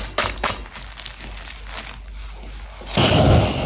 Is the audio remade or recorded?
recorded